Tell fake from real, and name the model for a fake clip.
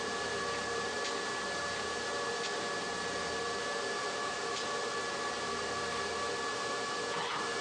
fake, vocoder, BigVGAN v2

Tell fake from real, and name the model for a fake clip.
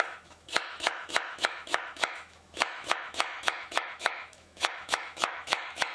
fake, autoencoder, DAC-VAE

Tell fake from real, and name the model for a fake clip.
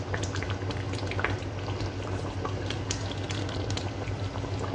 real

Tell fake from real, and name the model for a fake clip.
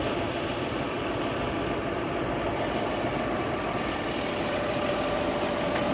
real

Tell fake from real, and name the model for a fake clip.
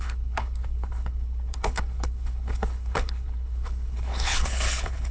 fake, codec, HILCodec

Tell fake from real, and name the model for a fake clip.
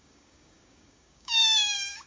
fake, codec, DAC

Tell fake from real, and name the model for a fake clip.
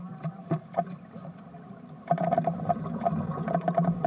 real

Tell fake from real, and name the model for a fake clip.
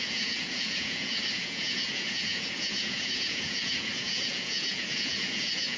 fake, vocoder, Vocos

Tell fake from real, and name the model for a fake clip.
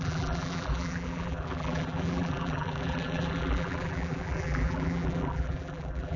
fake, vocoder, BigVGAN v2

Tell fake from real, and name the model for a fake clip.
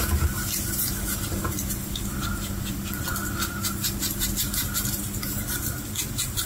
real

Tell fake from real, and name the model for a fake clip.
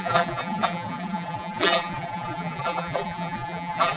fake, vocoder, BigVGAN v2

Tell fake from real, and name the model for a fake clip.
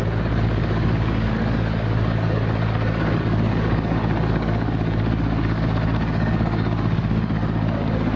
fake, codec, DAC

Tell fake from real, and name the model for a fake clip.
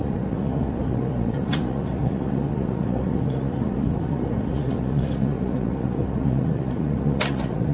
fake, vocoder, Vocos